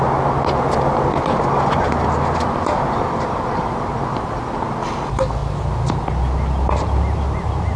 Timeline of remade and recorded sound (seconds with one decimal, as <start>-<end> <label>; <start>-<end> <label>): 0.0-7.8 recorded